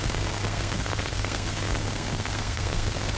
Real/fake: fake